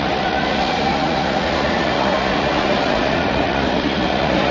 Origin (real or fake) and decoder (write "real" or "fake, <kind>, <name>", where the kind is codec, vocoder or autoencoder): fake, vocoder, Vocos